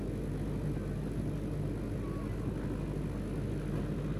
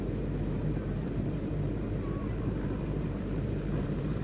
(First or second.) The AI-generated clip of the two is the second